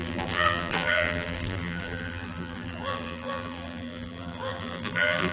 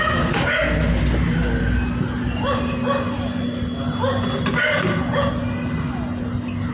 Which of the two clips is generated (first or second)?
first